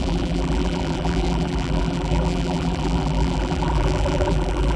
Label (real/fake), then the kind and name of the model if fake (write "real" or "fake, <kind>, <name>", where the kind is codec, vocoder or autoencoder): fake, vocoder, BigVGAN v2